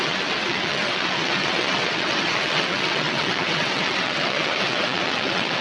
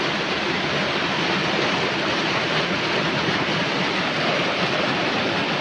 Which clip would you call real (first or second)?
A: second